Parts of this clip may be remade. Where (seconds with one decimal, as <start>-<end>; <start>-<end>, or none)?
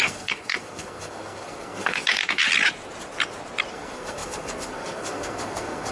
0.0-2.4; 3.7-5.9